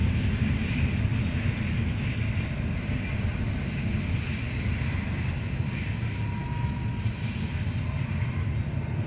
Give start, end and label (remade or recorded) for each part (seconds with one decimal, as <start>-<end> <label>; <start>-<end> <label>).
0.0-6.4 recorded; 6.4-7.0 remade; 7.0-9.1 recorded